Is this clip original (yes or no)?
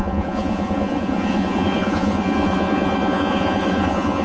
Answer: no